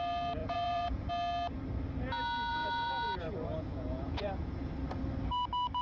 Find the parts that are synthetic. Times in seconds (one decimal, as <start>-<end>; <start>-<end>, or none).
0.4-1.1; 2.5-4.7